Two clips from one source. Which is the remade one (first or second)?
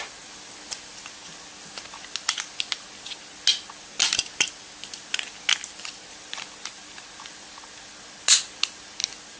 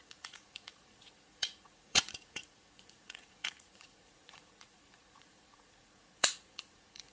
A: second